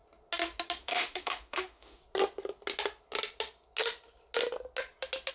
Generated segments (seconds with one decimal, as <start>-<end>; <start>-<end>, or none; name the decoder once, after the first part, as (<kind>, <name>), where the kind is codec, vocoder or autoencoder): 0.8-2.0 (autoencoder, DAC-VAE)